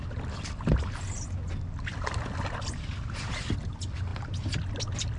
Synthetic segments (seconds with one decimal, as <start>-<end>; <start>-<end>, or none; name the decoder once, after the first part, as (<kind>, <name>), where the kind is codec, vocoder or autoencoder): 4.1-4.8 (vocoder, BigVGAN v2)